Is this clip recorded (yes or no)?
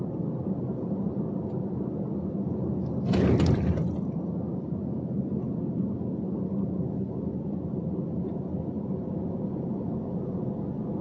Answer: yes